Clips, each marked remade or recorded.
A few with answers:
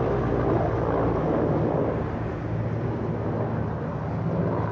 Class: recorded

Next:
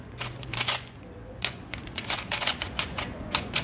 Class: remade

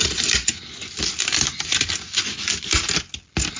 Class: recorded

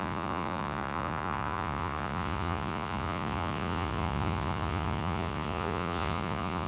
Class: remade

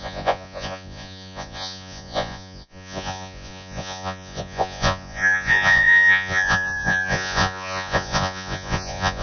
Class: remade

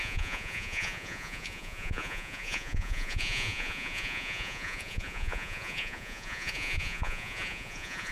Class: remade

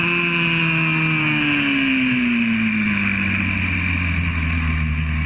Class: recorded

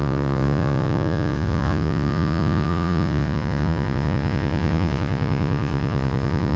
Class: remade